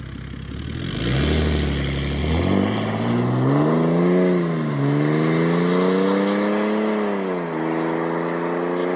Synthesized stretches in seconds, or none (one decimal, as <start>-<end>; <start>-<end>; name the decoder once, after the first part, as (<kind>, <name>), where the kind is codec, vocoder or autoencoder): 2.2-3.1 (vocoder, BigVGAN v2)